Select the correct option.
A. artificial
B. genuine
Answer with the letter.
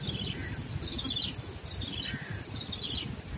B